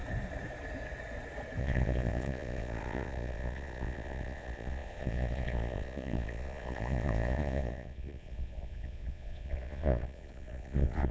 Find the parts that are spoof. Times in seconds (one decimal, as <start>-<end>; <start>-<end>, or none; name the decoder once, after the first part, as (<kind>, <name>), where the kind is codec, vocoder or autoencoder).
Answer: 1.6-11.1 (vocoder, Vocos)